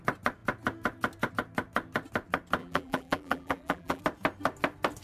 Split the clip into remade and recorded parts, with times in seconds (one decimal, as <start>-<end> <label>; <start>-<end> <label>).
0.0-2.6 recorded; 2.6-4.0 remade; 4.0-5.0 recorded